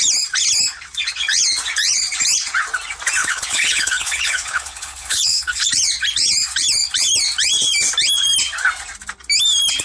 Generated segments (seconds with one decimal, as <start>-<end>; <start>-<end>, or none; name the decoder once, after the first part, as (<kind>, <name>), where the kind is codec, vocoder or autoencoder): 3.2-5.7 (codec, HILCodec)